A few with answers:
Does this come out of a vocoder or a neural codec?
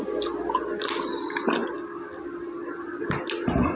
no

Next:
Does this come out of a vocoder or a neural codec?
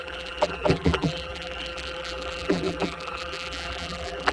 yes